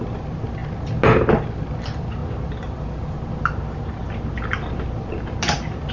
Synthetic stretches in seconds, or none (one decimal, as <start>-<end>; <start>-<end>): none